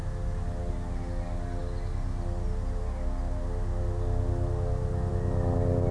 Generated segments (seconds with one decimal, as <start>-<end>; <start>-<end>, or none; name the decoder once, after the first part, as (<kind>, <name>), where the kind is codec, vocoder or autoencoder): none